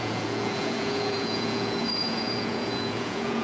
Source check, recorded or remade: remade